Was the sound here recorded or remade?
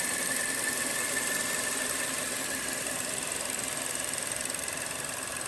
recorded